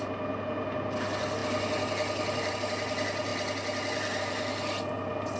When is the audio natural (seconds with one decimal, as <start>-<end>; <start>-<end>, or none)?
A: 0.0-5.4

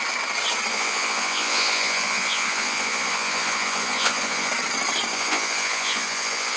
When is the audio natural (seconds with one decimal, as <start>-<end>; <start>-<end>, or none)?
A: 0.0-0.7; 4.5-5.1